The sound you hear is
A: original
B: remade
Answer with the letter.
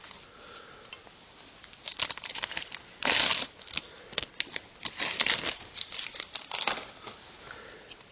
A